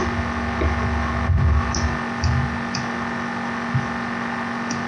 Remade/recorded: recorded